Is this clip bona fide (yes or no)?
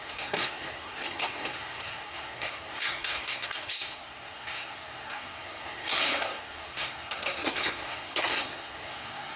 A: no